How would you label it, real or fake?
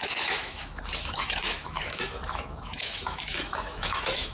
fake